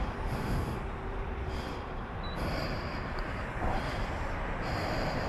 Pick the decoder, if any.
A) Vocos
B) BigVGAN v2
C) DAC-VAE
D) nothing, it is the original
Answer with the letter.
B